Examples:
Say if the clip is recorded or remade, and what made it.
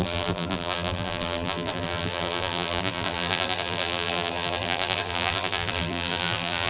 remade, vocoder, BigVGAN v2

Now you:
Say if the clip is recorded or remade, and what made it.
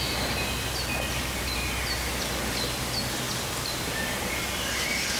recorded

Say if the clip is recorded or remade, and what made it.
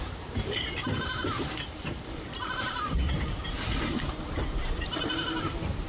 remade, vocoder, BigVGAN v2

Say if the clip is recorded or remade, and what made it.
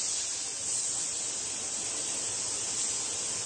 recorded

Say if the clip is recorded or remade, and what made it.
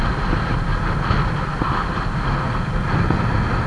recorded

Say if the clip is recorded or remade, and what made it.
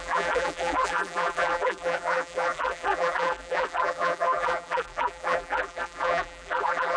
remade, vocoder, BigVGAN v2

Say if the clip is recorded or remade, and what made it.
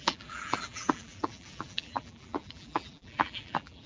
remade, vocoder, BigVGAN v2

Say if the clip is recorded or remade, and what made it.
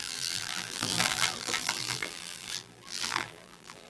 remade, vocoder, BigVGAN v2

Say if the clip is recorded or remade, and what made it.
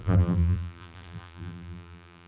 remade, vocoder, BigVGAN v2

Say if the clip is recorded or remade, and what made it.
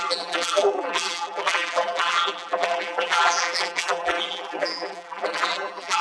remade, vocoder, BigVGAN v2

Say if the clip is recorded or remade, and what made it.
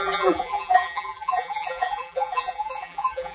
remade, vocoder, BigVGAN v2